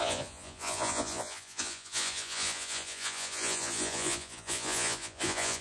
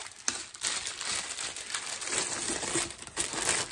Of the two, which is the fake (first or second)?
first